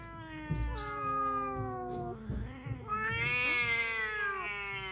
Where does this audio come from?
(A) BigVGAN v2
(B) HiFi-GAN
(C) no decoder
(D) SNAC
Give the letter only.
C